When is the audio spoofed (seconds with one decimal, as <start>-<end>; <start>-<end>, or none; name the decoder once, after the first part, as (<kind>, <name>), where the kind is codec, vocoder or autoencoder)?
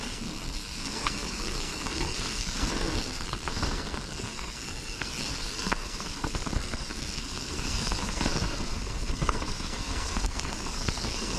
0.0-11.4 (codec, SNAC)